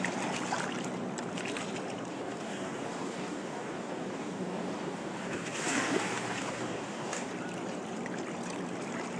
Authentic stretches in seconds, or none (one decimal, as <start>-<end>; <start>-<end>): 0.0-2.1; 7.3-9.2